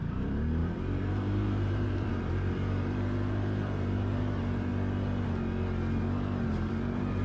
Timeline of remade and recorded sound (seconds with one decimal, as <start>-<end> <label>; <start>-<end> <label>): 0.0-4.7 remade; 4.7-6.5 recorded; 6.5-7.2 remade